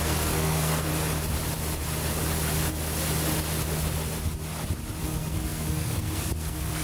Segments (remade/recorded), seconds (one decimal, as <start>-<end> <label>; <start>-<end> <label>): 0.0-0.9 remade; 0.9-5.0 recorded; 5.0-6.8 remade